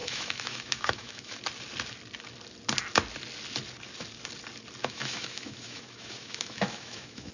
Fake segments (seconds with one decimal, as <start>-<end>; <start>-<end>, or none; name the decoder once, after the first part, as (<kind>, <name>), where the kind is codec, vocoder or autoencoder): 0.0-1.4 (autoencoder, DAC-VAE); 4.8-7.3